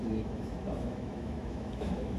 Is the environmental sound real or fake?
fake